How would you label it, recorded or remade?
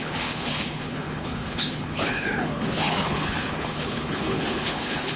remade